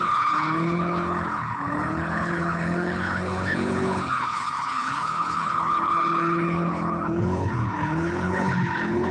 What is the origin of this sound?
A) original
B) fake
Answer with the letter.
B